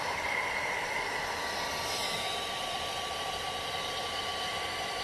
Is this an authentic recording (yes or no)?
no